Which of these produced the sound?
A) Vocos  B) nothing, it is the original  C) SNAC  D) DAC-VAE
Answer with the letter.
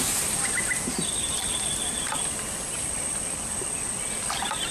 B